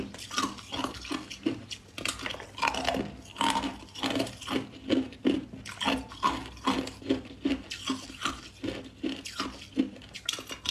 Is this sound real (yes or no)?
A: yes